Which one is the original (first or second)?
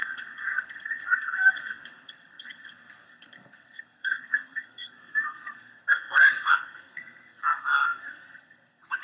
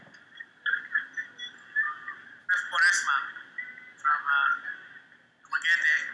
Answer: second